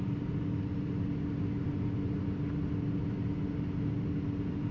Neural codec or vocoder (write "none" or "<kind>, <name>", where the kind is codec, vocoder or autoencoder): none